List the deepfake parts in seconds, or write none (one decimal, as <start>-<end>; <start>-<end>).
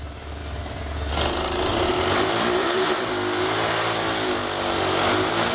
1.7-3.4